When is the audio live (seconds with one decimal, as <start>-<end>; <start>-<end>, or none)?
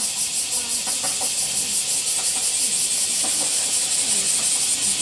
0.0-5.0